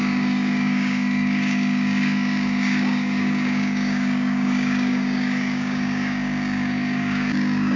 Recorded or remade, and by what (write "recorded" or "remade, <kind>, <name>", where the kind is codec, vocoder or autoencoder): remade, codec, DAC